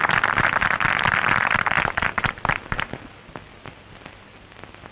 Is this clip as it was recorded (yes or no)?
no